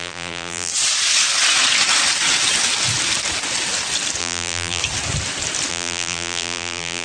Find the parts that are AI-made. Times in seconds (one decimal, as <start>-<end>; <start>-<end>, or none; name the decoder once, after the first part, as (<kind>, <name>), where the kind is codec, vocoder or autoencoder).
0.0-0.7 (vocoder, BigVGAN v2); 4.2-4.8; 5.7-7.0